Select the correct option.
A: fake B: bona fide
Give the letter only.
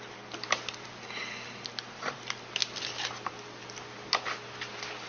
B